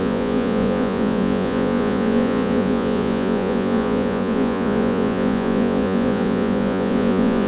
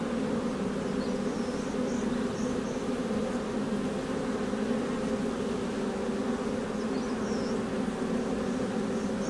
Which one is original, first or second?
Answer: second